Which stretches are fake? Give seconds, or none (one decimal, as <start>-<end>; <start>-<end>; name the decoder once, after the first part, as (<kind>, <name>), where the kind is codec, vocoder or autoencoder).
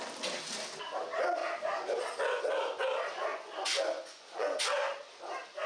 3.3-4.6 (vocoder, Vocos)